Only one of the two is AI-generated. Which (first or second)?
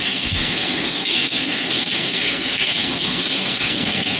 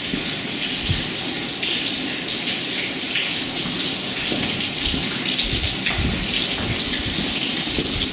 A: first